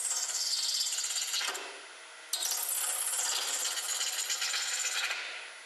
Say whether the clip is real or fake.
real